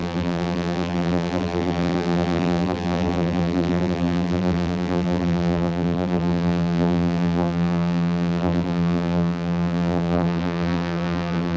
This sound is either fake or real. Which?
fake